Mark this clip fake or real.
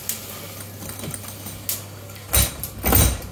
real